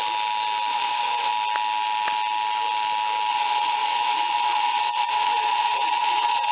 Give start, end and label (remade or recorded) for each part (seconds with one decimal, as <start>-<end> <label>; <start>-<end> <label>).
0.0-0.7 recorded; 0.7-1.3 remade; 1.3-3.3 recorded; 3.3-6.5 remade